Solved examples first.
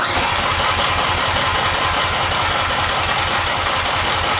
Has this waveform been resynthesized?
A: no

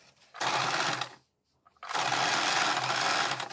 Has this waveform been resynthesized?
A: no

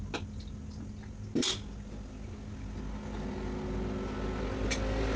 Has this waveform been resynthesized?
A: no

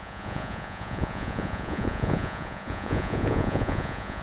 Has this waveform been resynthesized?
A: yes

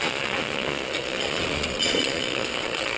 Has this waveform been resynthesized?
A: yes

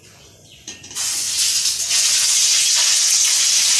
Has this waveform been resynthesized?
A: yes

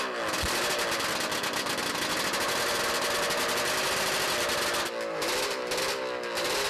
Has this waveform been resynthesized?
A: no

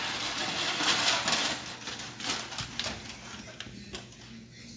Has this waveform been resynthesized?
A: no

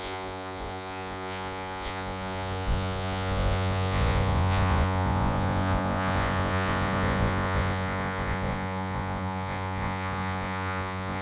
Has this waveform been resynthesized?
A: yes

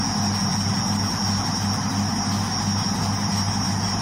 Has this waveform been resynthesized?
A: no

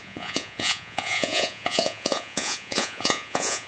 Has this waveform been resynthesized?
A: yes